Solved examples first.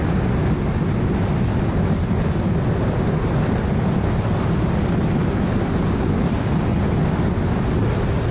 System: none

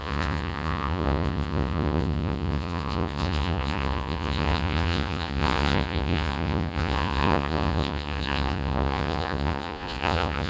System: vocoder, Vocos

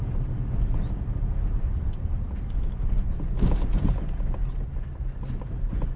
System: none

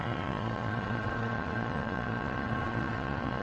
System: vocoder, Vocos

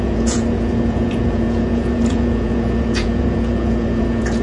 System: vocoder, Vocos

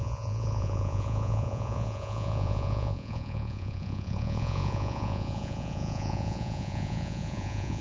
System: vocoder, Vocos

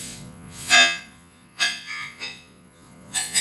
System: vocoder, Vocos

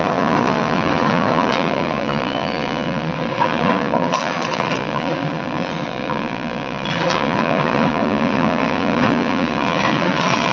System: vocoder, Vocos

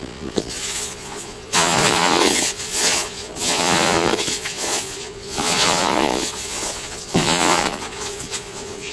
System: vocoder, Vocos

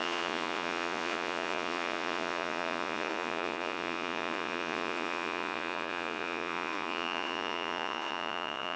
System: vocoder, Vocos